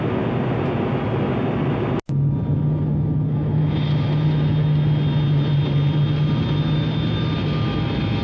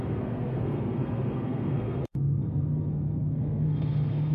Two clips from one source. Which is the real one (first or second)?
first